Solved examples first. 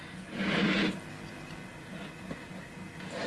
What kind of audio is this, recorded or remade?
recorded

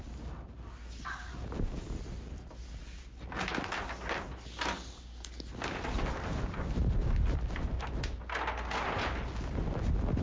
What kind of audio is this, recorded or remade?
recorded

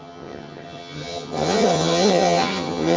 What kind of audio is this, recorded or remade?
remade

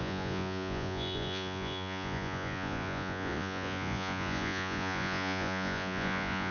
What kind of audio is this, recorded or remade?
remade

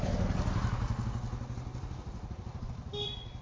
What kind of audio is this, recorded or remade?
recorded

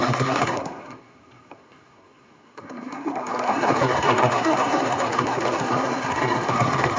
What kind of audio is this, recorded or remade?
remade